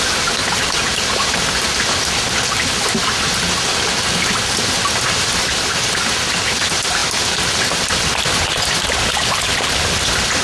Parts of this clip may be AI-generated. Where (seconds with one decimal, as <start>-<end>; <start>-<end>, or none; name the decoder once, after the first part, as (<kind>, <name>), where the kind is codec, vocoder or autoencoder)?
none